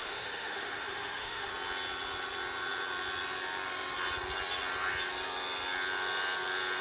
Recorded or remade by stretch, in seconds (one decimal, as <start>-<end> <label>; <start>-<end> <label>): 0.0-1.5 remade; 1.5-6.8 recorded

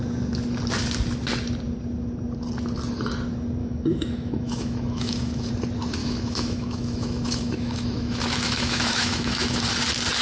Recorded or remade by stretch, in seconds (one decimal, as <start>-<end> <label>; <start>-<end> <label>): 0.0-3.6 recorded; 3.6-5.5 remade; 5.5-6.0 recorded; 6.0-9.6 remade; 9.6-10.2 recorded

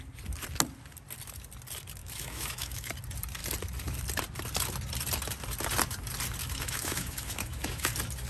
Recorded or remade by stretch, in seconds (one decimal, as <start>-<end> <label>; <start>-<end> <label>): 0.0-2.0 recorded; 2.0-2.9 remade; 2.9-6.4 recorded; 6.4-7.9 remade; 7.9-8.3 recorded

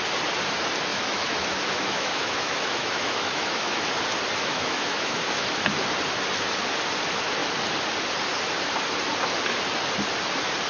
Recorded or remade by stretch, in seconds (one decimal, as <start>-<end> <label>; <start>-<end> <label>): 0.0-0.9 recorded; 0.9-3.9 remade; 3.9-4.4 recorded; 4.4-5.5 remade; 5.5-10.7 recorded

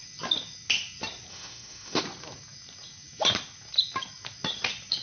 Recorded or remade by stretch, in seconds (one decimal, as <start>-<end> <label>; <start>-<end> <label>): 0.0-1.3 recorded; 1.3-2.0 remade; 2.0-5.0 recorded

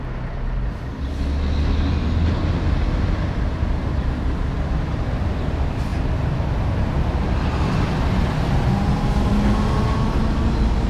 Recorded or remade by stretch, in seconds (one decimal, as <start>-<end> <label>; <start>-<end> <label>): 0.0-10.9 recorded

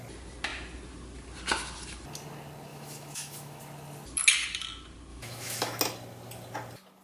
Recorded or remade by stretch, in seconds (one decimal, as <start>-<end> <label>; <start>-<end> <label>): 0.0-2.7 recorded; 2.7-3.6 remade; 3.6-5.1 recorded; 5.1-5.8 remade; 5.8-7.0 recorded

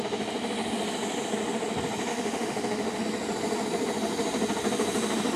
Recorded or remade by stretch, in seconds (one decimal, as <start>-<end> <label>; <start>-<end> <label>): 0.0-2.1 recorded; 2.1-3.0 remade; 3.0-5.4 recorded